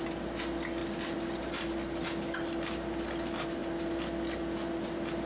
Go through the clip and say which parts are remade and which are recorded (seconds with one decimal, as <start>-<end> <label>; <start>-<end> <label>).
0.0-5.3 recorded